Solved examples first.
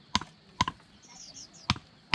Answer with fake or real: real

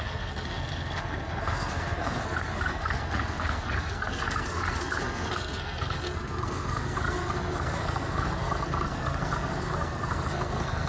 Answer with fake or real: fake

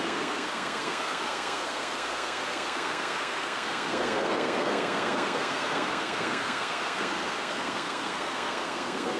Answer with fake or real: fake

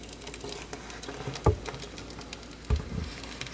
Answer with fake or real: real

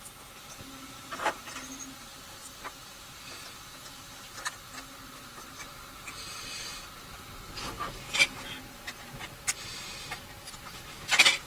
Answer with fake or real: real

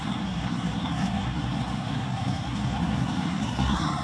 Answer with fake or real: fake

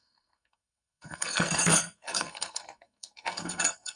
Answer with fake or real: fake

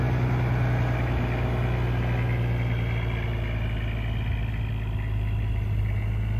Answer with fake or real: real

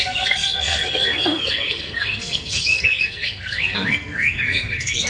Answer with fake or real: fake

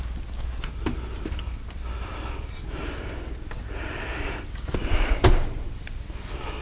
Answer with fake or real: real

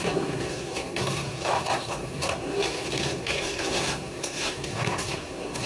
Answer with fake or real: fake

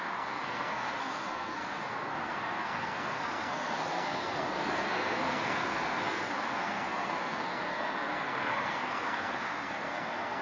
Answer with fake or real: fake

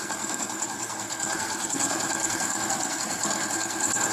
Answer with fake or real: fake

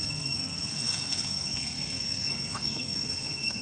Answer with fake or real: fake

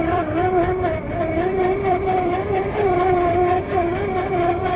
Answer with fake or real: real